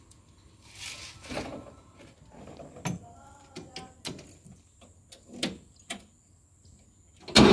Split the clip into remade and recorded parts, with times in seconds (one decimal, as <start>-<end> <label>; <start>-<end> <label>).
0.0-7.5 recorded

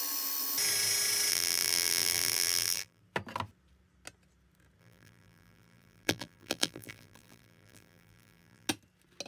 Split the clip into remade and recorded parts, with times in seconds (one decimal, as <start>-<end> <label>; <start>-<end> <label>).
0.0-1.3 recorded; 1.3-3.0 remade; 3.0-4.8 recorded; 4.8-8.7 remade; 8.7-9.3 recorded

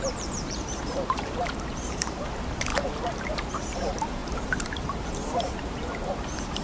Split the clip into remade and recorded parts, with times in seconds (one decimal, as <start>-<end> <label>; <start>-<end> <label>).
0.0-2.7 remade; 2.7-3.3 recorded; 3.3-6.6 remade

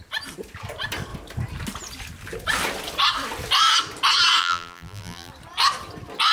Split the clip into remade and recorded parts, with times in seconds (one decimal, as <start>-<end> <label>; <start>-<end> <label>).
0.0-4.4 recorded; 4.4-5.3 remade; 5.3-6.3 recorded

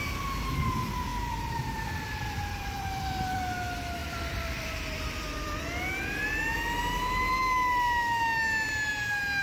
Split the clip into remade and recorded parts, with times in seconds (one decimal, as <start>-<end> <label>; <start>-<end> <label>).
0.0-1.1 recorded; 1.1-3.4 remade; 3.4-4.0 recorded; 4.0-5.6 remade; 5.6-9.4 recorded

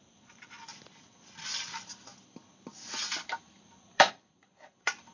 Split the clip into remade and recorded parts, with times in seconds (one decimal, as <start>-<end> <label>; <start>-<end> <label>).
0.0-0.7 remade; 0.7-1.6 recorded; 1.6-2.1 remade; 2.1-3.8 recorded; 3.8-5.1 remade

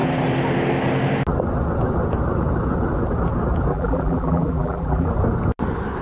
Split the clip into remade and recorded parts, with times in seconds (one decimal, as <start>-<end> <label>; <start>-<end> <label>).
0.0-3.7 recorded; 3.7-5.1 remade; 5.1-6.0 recorded

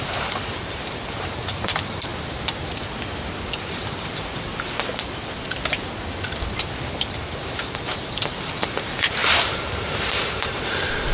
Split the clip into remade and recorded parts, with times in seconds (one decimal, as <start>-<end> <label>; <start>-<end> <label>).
0.0-2.1 remade; 2.1-3.6 recorded; 3.6-4.5 remade; 4.5-6.9 recorded; 6.9-11.1 remade